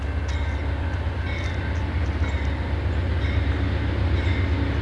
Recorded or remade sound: recorded